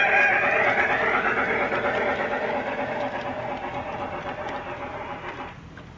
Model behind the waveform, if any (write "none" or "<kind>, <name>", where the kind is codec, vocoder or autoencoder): none